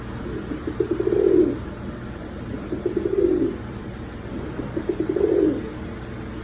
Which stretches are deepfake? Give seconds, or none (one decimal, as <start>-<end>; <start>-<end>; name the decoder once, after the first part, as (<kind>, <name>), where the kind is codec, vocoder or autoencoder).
2.5-5.6 (vocoder, BigVGAN v2)